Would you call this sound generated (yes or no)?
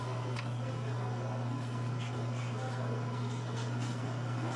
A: yes